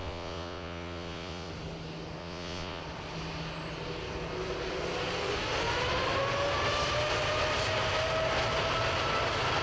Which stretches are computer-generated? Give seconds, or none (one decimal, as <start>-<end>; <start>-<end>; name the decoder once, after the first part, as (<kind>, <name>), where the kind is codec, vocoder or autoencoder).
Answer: 0.0-1.5 (vocoder, Vocos); 2.2-2.8

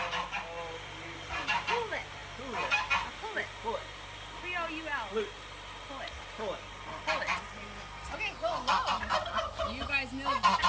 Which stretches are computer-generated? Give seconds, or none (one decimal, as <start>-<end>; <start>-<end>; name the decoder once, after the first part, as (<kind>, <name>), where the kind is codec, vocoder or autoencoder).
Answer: none

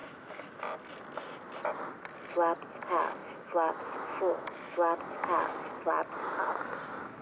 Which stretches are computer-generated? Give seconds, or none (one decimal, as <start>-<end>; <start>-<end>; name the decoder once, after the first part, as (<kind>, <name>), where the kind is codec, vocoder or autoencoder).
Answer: 0.0-0.6 (autoencoder, DAC-VAE); 3.2-5.0

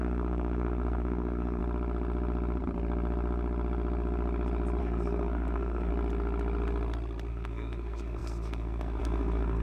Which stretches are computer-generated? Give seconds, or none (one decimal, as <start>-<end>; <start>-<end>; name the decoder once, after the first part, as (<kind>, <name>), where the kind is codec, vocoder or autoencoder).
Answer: 0.0-1.6 (codec, SNAC); 4.8-5.9; 7.3-9.6

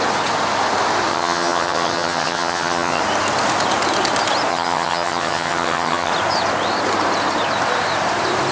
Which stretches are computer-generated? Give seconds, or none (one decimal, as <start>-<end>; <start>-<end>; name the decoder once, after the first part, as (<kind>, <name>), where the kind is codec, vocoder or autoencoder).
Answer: 1.1-3.0 (vocoder, HiFi-GAN); 4.5-6.1

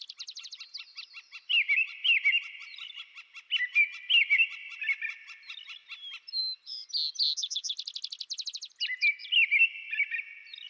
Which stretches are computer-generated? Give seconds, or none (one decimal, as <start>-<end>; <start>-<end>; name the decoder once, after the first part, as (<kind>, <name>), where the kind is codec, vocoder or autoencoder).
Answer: none

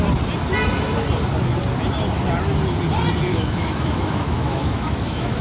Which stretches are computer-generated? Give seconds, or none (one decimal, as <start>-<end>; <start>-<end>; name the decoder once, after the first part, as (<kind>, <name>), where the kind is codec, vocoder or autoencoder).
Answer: 3.3-5.4 (autoencoder, DAC-VAE)

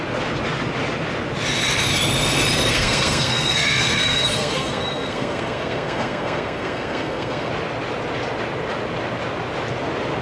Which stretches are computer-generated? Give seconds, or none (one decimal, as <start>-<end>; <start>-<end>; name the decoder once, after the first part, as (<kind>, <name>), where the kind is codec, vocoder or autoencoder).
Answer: 2.7-7.5 (codec, SNAC)